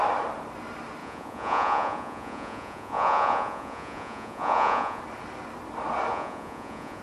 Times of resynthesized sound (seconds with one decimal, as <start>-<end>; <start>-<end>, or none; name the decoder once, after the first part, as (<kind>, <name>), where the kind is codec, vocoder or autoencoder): 1.0-5.0 (vocoder, Vocos); 6.1-7.0